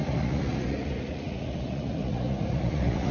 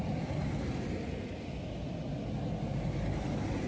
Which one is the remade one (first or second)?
first